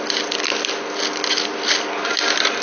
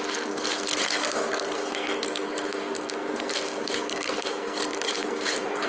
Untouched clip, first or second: first